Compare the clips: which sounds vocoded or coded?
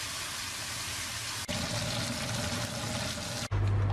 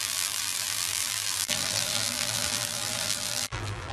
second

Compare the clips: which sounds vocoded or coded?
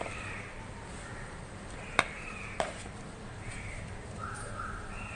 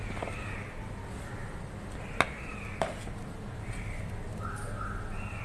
first